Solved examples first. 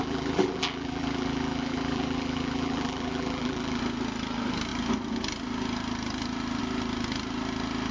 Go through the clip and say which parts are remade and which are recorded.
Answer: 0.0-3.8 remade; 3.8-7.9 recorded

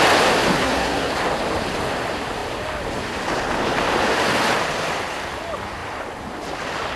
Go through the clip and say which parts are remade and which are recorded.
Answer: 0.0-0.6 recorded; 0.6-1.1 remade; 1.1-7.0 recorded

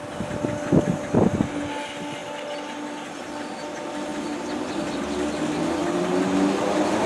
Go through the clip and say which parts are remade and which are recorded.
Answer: 0.0-7.1 recorded

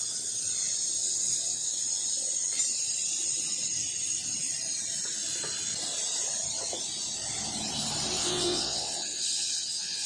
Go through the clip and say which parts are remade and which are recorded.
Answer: 0.0-1.0 recorded; 1.0-1.8 remade; 1.8-8.2 recorded; 8.2-10.1 remade